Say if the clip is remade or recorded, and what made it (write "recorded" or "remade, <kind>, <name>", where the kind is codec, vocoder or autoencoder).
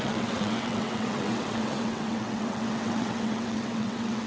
remade, vocoder, WaveNeXt